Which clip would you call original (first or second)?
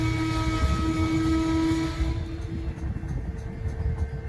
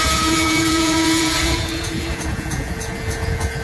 first